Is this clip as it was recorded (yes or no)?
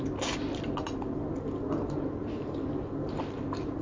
yes